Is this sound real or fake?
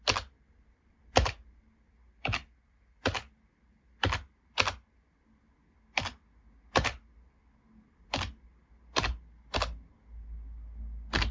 real